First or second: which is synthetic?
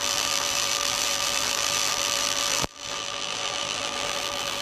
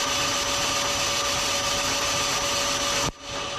first